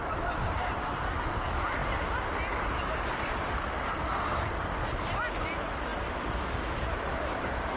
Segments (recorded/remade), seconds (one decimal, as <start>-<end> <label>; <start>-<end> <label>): 0.0-7.8 recorded